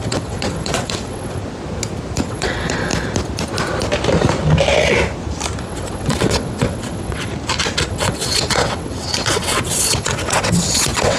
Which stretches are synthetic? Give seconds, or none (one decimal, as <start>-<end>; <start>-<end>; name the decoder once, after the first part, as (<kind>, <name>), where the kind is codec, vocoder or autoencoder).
0.0-1.4 (vocoder, WaveNeXt); 2.2-2.9; 5.6-7.3; 7.9-11.2